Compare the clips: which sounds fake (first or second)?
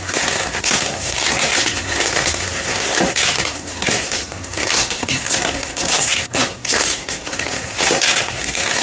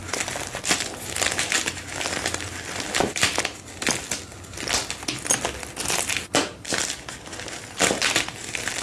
first